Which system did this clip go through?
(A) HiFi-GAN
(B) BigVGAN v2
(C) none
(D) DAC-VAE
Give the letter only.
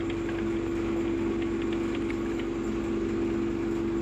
C